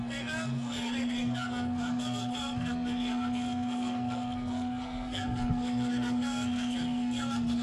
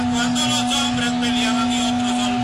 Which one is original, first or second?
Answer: second